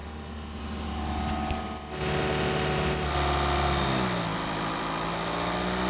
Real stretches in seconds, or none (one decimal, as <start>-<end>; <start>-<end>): 0.0-5.9